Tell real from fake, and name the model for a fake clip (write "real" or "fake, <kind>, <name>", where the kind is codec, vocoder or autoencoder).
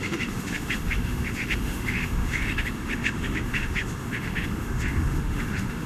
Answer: fake, autoencoder, DAC-VAE